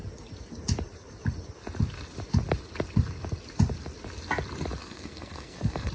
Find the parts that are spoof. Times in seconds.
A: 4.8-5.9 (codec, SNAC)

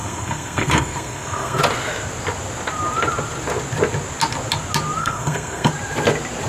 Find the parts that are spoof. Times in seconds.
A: 0.0-1.6 (codec, SNAC); 5.0-5.7